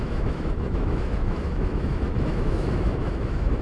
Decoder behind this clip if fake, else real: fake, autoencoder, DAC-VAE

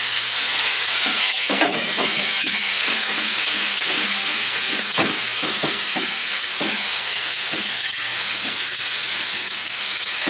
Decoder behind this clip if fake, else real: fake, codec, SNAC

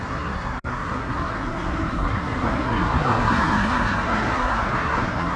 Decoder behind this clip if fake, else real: fake, codec, SNAC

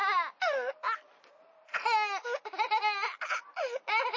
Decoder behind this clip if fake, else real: real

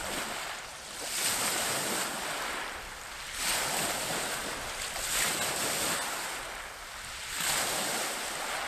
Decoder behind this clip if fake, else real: real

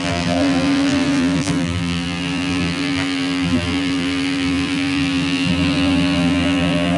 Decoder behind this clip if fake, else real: fake, vocoder, BigVGAN v2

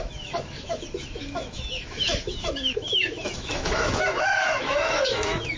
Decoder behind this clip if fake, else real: fake, autoencoder, DAC-VAE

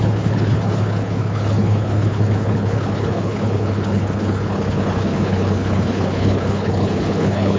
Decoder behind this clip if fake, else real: fake, codec, HILCodec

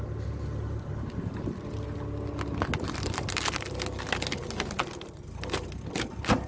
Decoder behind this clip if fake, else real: real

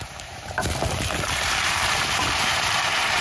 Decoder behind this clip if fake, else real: fake, vocoder, BigVGAN v2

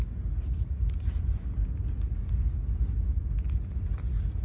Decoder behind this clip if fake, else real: real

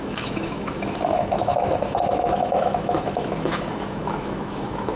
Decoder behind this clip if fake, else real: fake, autoencoder, DAC-VAE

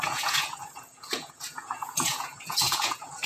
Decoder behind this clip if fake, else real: fake, vocoder, Vocos